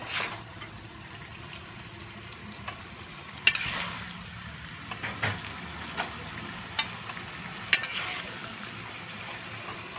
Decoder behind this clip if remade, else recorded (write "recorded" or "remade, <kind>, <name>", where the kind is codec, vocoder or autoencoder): recorded